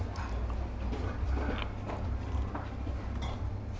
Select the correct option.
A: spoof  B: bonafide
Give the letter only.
B